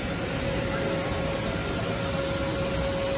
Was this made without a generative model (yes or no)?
yes